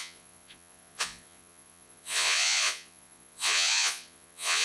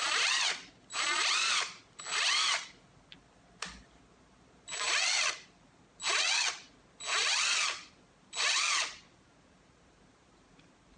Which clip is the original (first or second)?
second